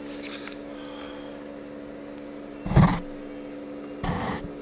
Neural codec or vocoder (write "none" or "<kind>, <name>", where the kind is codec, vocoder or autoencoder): none